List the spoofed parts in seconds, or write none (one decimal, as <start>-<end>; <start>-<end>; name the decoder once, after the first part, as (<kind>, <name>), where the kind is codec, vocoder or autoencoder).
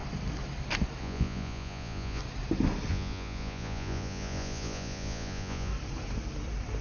1.0-2.2 (vocoder, Vocos); 2.9-5.7